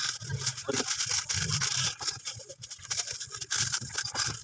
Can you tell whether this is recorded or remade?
recorded